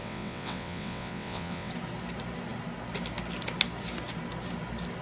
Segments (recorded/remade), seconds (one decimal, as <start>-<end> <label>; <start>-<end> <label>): 0.0-1.7 remade; 1.7-5.0 recorded